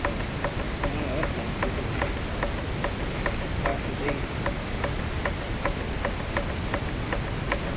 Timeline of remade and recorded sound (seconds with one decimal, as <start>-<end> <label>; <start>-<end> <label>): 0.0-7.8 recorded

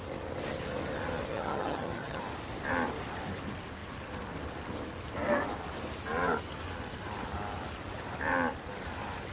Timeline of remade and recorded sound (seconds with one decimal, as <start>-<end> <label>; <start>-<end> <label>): 0.0-1.3 recorded; 1.3-2.2 remade; 2.2-9.3 recorded

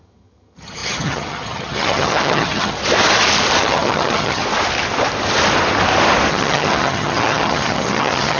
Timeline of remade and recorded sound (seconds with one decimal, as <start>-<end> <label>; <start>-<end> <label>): 0.0-2.8 remade; 2.8-3.6 recorded; 3.6-4.4 remade; 4.4-6.3 recorded; 6.3-8.4 remade